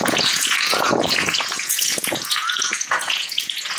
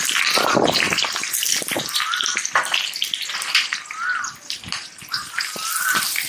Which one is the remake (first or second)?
first